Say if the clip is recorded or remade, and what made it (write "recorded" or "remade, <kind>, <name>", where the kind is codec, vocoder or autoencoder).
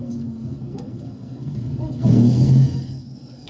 remade, codec, SNAC